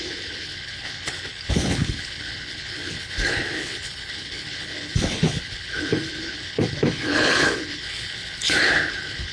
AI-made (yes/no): yes